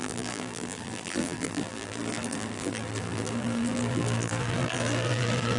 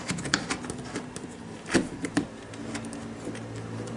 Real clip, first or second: second